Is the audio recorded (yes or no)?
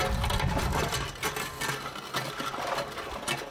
yes